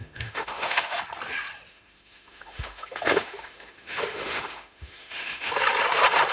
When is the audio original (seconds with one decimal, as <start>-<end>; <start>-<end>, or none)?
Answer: 1.0-1.7; 5.5-6.3